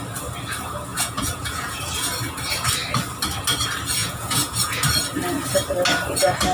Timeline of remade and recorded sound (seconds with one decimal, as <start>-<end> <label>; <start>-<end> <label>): 0.0-0.9 recorded; 0.9-1.8 remade; 1.8-4.0 recorded; 4.0-4.8 remade; 4.8-6.5 recorded